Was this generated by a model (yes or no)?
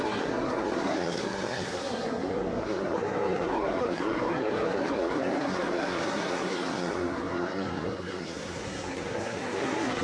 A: yes